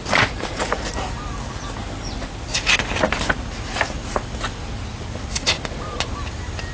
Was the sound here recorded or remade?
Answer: recorded